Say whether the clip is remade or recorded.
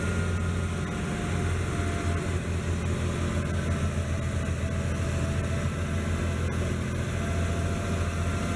recorded